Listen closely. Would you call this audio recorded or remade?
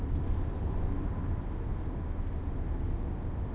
recorded